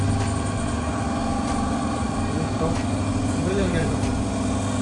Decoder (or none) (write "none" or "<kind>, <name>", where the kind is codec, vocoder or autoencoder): none